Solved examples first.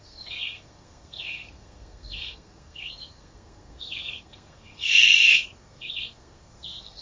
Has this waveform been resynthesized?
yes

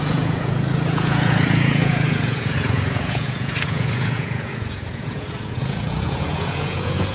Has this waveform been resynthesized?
yes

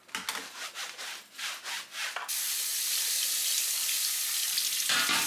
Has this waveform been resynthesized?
no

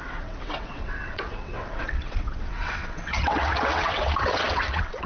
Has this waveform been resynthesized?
yes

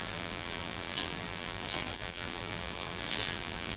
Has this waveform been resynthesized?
yes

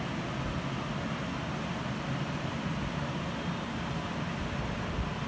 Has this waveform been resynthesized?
no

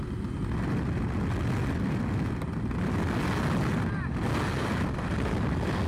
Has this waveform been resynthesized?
no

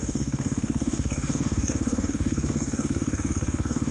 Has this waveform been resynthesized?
yes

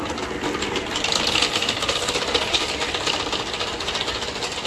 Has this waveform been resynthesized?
no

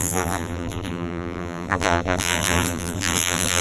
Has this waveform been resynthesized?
yes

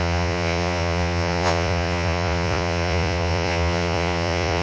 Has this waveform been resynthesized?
yes